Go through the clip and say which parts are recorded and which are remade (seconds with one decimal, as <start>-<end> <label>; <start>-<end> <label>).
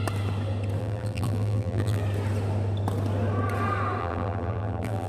0.0-0.8 recorded; 0.8-2.0 remade; 2.0-4.0 recorded; 4.0-5.1 remade